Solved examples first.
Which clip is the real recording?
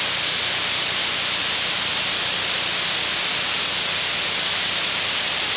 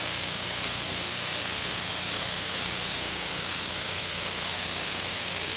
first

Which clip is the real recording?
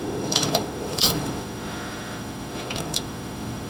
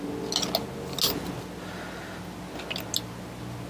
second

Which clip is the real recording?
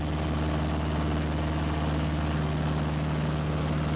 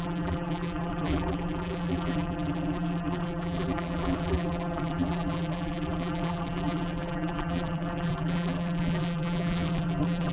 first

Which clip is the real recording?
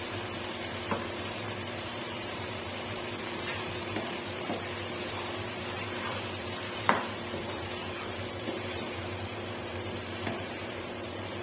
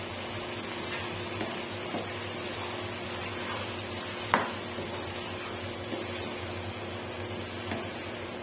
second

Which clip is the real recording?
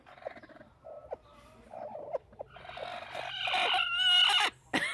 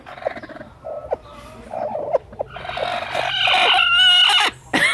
second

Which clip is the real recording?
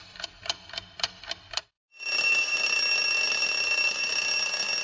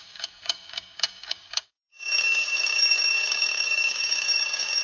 first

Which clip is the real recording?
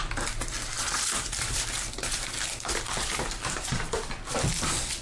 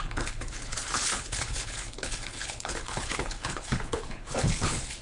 first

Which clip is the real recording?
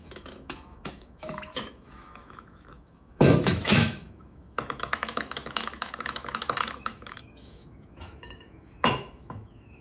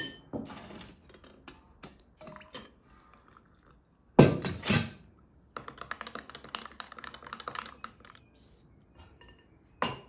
second